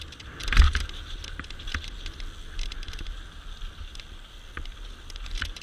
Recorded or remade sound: recorded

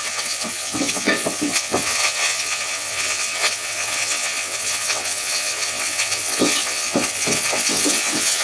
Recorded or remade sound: remade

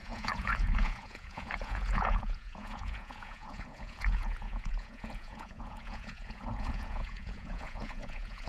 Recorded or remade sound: remade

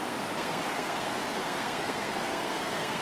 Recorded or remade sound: remade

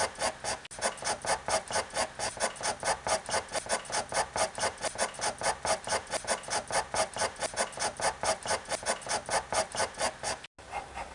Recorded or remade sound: recorded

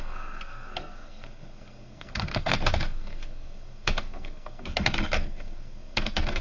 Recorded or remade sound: remade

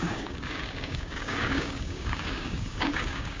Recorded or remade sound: remade